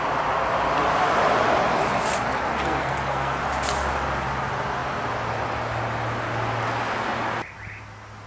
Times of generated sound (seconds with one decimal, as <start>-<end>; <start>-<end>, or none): 2.5-3.4

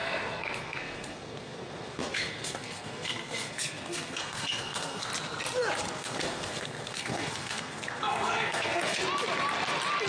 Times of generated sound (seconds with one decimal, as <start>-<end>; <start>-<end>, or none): 0.0-5.1; 5.9-9.0

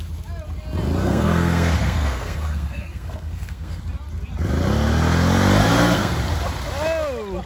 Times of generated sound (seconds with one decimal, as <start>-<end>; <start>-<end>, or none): 1.0-3.8; 5.6-6.2